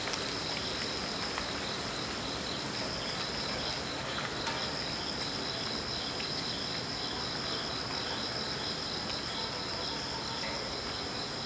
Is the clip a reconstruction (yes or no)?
no